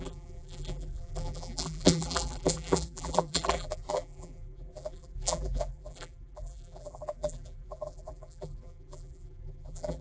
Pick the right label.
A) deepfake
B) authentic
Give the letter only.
A